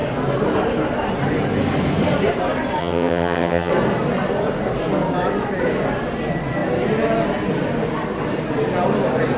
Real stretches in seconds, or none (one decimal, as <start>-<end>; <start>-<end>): 0.0-2.8; 3.7-9.4